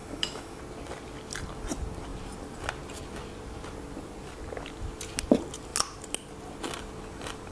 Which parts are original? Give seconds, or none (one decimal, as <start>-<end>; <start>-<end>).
0.6-7.5